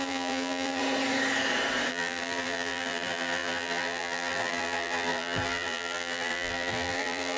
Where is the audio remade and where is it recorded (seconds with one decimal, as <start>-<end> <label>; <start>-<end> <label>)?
0.0-0.8 remade; 0.8-1.9 recorded; 1.9-7.4 remade

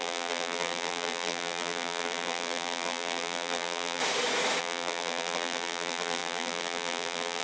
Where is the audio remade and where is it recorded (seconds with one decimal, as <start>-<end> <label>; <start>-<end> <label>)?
0.0-4.0 remade; 4.0-4.6 recorded; 4.6-7.4 remade

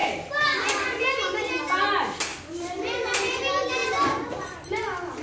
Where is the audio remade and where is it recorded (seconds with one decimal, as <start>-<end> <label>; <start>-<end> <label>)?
0.0-2.3 recorded; 2.3-3.4 remade; 3.4-3.8 recorded; 3.8-4.7 remade; 4.7-5.2 recorded